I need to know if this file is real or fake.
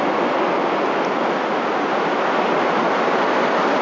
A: real